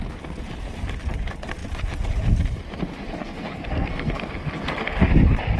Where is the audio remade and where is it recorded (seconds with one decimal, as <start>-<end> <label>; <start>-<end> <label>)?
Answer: 0.0-3.2 recorded; 3.2-5.1 remade; 5.1-5.6 recorded